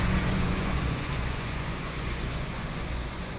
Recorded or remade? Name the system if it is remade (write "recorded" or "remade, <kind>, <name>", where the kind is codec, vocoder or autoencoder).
remade, vocoder, Vocos